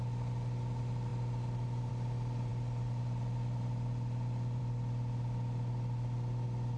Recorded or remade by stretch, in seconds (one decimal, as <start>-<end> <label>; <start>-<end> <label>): 0.0-6.8 recorded